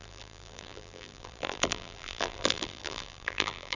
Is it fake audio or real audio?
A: fake